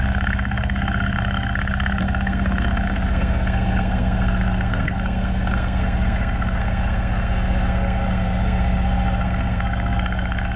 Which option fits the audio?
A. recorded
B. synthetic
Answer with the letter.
B